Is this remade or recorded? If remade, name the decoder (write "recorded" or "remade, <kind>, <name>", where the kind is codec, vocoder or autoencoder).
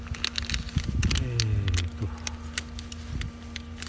recorded